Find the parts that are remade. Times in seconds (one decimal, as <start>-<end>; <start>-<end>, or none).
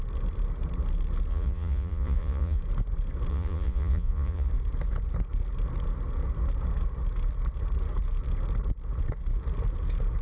1.3-2.6; 3.3-4.5